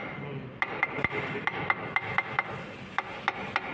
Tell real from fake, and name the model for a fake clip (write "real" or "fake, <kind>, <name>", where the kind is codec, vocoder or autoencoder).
real